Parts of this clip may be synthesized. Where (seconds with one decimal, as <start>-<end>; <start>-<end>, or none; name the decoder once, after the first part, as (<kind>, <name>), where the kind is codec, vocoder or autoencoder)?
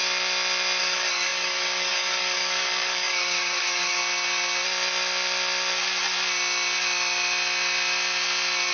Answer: 0.8-4.0 (codec, DAC)